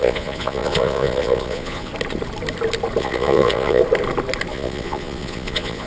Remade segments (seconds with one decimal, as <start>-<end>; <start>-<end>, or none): 0.0-1.9; 3.0-3.8; 4.5-5.9